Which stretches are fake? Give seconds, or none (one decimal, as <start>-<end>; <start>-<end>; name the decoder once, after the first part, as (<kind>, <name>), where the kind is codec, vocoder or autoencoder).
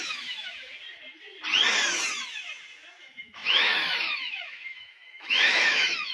0.0-0.7 (autoencoder, DAC-VAE); 3.0-6.1